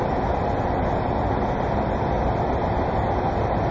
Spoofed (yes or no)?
no